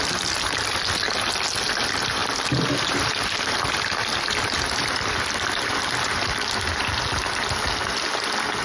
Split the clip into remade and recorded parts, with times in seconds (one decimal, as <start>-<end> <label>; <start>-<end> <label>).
0.0-2.2 recorded; 2.2-7.0 remade; 7.0-8.6 recorded